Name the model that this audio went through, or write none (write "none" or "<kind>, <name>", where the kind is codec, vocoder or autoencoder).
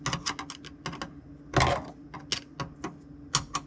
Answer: none